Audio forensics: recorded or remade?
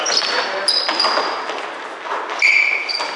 recorded